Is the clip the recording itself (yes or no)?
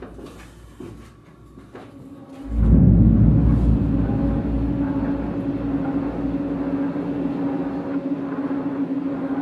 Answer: yes